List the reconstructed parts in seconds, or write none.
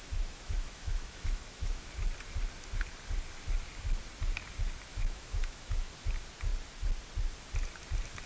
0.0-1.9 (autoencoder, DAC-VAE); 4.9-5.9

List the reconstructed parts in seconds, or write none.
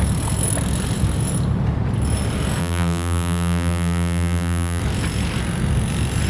2.6-4.8 (vocoder, BigVGAN v2)